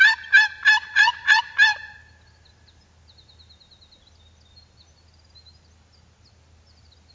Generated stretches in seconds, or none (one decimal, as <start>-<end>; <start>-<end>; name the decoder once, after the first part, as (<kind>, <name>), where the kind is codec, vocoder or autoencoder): 0.8-1.4 (vocoder, Vocos)